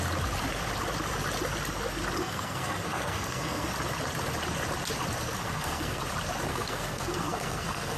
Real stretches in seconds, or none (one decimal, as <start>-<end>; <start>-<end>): 0.0-2.2; 3.7-5.4; 6.0-6.5